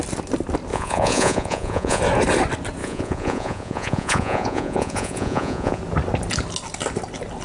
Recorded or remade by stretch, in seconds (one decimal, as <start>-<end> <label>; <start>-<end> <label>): 0.0-0.7 recorded; 0.7-2.0 remade; 2.0-2.8 recorded; 2.8-5.8 remade; 5.8-7.4 recorded